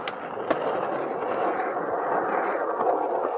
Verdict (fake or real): real